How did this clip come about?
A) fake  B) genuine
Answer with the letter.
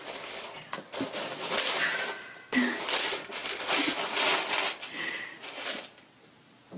B